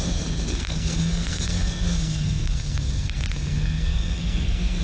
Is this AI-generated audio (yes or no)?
yes